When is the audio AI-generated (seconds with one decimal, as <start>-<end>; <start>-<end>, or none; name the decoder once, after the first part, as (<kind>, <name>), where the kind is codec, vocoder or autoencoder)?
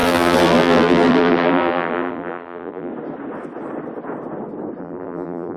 0.0-2.9 (vocoder, BigVGAN v2); 4.8-5.6